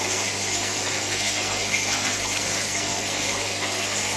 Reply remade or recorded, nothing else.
remade